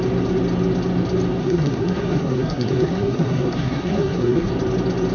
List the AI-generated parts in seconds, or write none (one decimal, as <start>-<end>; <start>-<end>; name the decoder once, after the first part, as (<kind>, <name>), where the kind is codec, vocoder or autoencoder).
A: 1.4-4.5 (codec, SNAC)